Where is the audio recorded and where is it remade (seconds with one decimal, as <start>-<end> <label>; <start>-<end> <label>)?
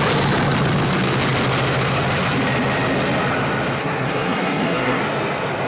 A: 0.0-3.8 recorded; 3.8-5.0 remade; 5.0-5.7 recorded